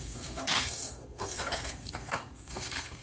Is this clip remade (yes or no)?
yes